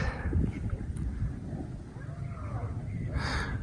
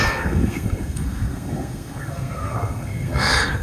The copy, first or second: second